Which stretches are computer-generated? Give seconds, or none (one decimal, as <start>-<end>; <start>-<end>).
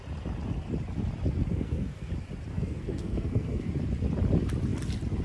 1.5-2.1; 2.5-3.7